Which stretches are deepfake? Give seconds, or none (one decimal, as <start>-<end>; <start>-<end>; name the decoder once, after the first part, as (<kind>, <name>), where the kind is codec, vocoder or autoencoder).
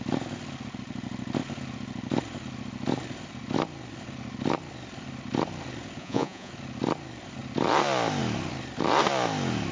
6.0-6.5 (vocoder, Vocos)